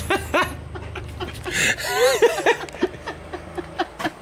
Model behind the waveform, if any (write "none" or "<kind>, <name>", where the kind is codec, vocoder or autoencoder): none